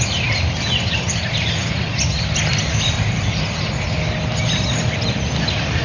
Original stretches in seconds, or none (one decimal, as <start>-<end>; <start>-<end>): 0.0-5.8